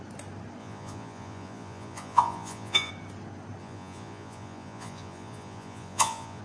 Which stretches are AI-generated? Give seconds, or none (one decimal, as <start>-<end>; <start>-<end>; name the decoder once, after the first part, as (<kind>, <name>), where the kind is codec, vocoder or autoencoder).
0.6-2.9 (vocoder, Vocos); 3.6-6.4